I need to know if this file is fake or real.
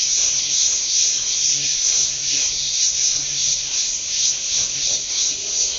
fake